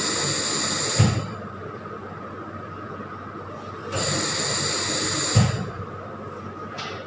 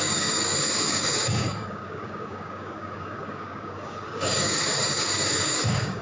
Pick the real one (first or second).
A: first